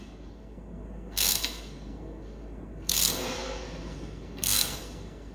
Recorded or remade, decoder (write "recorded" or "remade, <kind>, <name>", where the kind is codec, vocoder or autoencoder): remade, codec, SNAC